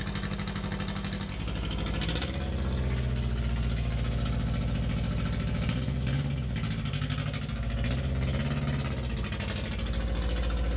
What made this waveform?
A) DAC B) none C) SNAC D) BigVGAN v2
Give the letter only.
B